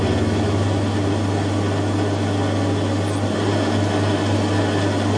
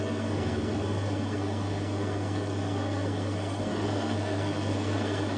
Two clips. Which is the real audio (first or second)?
first